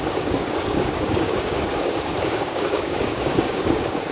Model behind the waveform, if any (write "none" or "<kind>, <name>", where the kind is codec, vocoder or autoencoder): codec, DAC